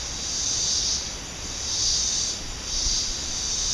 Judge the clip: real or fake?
real